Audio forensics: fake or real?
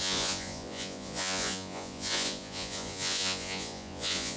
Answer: fake